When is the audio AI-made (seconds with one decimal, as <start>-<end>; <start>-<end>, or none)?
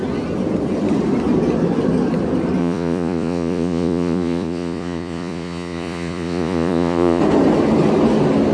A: 2.6-7.2